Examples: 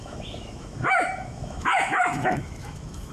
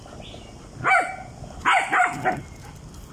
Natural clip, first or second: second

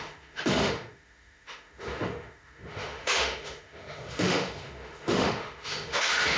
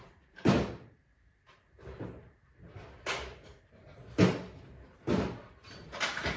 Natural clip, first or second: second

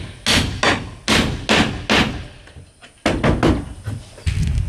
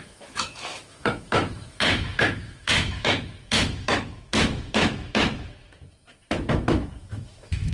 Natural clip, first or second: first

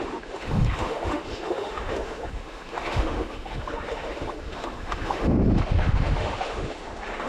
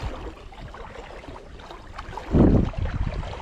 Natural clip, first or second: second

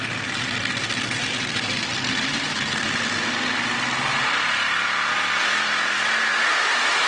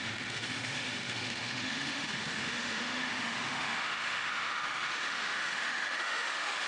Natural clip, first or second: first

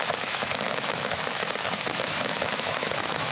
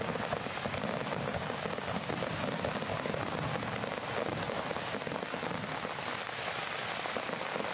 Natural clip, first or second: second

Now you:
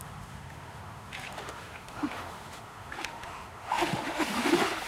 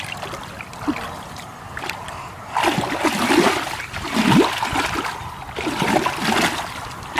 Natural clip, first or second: second